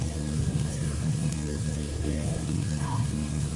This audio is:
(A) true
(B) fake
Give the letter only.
B